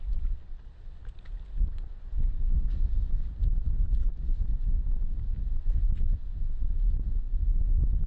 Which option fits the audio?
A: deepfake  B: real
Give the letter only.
B